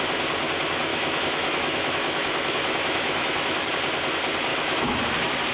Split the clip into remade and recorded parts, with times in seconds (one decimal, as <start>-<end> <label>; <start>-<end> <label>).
0.0-0.9 recorded; 0.9-3.7 remade; 3.7-4.5 recorded; 4.5-5.0 remade; 5.0-5.5 recorded